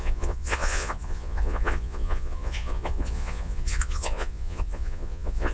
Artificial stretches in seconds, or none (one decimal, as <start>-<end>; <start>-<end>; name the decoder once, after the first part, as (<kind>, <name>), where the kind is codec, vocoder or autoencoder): 0.0-5.5 (vocoder, Vocos)